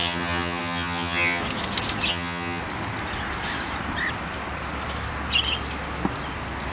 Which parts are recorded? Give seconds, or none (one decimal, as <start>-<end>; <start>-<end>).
1.4-2.1; 2.6-6.7